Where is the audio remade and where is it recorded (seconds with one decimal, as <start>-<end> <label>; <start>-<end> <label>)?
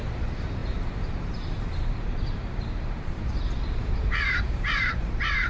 0.0-5.5 remade